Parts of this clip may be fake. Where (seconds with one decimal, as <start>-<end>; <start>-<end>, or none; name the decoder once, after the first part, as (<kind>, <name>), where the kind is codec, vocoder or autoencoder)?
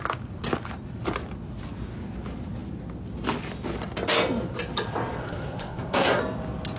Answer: 5.2-6.2 (codec, SNAC)